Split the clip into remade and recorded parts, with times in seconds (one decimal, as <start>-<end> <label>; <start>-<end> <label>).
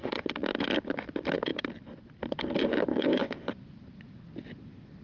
0.0-2.9 recorded; 2.9-3.5 remade; 3.5-5.0 recorded